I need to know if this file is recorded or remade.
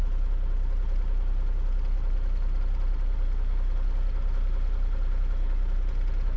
recorded